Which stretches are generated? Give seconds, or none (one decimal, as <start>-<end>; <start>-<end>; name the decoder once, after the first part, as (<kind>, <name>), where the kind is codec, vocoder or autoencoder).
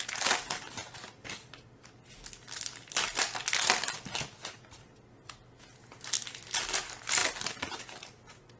none